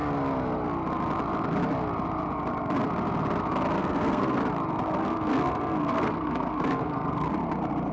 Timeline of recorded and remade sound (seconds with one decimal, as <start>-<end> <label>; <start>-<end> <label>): 0.0-3.8 recorded; 3.8-4.4 remade; 4.4-5.0 recorded; 5.0-7.3 remade; 7.3-7.9 recorded